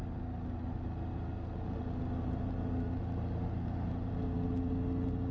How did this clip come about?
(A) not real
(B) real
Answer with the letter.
B